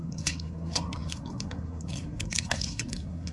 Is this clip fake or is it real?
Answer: fake